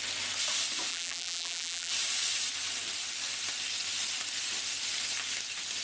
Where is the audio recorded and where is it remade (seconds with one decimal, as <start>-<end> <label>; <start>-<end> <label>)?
0.0-0.9 recorded; 0.9-1.9 remade; 1.9-5.8 recorded